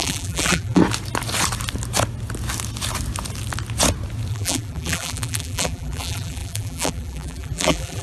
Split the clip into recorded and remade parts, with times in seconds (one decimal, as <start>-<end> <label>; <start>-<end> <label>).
0.0-0.8 remade; 0.8-4.3 recorded; 4.3-8.0 remade

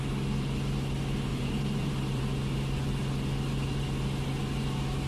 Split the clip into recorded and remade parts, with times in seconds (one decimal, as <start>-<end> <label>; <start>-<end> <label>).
0.0-1.3 recorded; 1.3-2.2 remade; 2.2-5.1 recorded

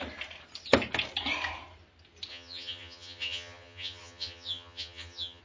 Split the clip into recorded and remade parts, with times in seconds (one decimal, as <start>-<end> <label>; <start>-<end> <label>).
0.0-2.3 recorded; 2.3-5.4 remade

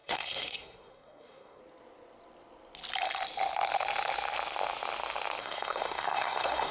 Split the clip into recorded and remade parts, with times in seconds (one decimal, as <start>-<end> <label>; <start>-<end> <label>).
0.0-1.6 remade; 1.6-5.4 recorded; 5.4-6.7 remade

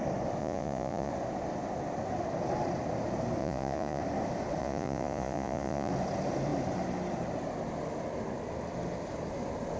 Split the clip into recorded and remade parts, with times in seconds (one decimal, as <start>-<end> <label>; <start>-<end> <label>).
0.0-0.4 recorded; 0.4-1.1 remade; 1.1-3.4 recorded; 3.4-4.0 remade; 4.0-4.6 recorded; 4.6-5.9 remade; 5.9-9.8 recorded

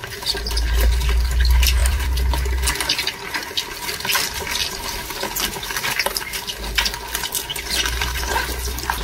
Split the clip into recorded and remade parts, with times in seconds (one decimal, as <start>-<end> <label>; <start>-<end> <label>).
0.0-1.8 recorded; 1.8-2.3 remade; 2.3-7.5 recorded; 7.5-8.3 remade; 8.3-9.0 recorded

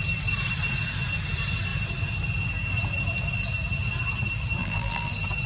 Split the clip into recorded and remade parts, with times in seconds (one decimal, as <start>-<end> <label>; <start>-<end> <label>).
0.0-4.6 recorded; 4.6-5.1 remade; 5.1-5.5 recorded

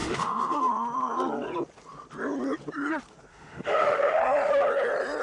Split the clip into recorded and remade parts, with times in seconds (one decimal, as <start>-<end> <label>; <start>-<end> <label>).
0.0-0.7 remade; 0.7-3.3 recorded; 3.3-4.2 remade; 4.2-5.2 recorded